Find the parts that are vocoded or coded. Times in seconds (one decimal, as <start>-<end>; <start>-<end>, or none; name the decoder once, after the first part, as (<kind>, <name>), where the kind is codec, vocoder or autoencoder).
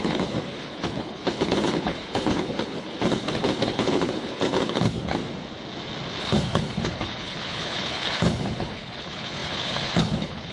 0.0-5.2 (codec, HILCodec); 6.2-10.5